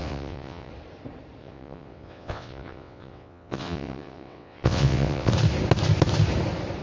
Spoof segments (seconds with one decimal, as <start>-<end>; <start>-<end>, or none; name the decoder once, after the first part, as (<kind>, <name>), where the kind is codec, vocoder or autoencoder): 0.0-0.7 (vocoder, WaveNeXt); 1.4-5.3